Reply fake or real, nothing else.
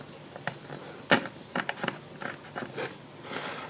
real